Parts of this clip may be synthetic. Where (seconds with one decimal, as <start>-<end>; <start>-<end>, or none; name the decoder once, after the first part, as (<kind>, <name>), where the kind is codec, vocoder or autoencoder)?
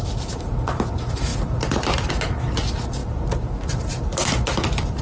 1.3-2.1 (vocoder, BigVGAN v2); 3.0-5.0